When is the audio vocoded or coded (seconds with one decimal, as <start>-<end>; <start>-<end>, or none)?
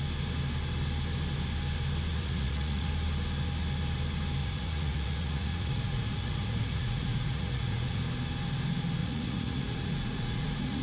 2.1-2.9; 4.4-8.0; 9.0-10.8